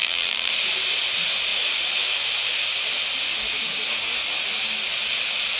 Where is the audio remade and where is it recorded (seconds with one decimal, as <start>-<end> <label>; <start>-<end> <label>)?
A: 0.0-0.5 remade; 0.5-5.6 recorded

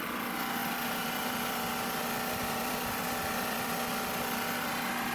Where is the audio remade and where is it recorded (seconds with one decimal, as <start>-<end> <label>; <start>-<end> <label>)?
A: 0.0-0.6 recorded; 0.6-3.7 remade; 3.7-5.1 recorded

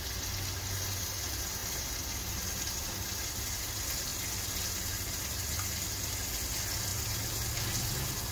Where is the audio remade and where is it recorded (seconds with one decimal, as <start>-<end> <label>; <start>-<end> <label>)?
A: 0.0-8.3 recorded

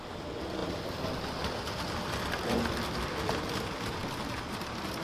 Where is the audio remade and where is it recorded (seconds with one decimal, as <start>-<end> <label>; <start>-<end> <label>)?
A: 0.0-5.0 recorded

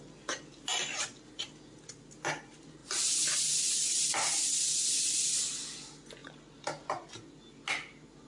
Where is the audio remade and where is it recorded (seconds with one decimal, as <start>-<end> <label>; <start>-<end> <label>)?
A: 0.0-3.8 recorded; 3.8-4.5 remade; 4.5-8.3 recorded

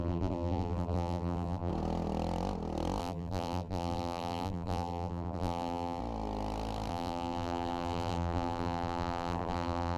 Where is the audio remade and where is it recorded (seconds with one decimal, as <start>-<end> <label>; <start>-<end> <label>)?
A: 0.0-1.7 remade; 1.7-3.0 recorded; 3.0-6.0 remade; 6.0-6.9 recorded; 6.9-10.0 remade